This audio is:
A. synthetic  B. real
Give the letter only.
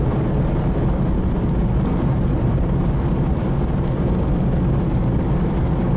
B